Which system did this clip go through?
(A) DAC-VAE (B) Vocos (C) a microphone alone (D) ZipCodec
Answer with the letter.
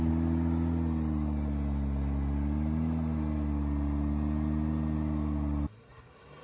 C